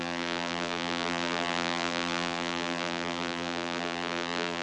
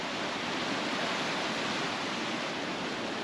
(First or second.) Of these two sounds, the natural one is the second